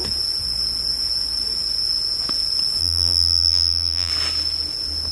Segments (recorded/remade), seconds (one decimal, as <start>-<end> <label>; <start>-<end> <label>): 0.0-2.8 recorded; 2.8-4.1 remade; 4.1-5.1 recorded